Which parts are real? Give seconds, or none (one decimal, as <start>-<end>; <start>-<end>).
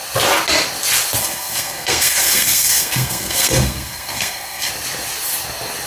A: 0.0-1.2; 4.7-5.9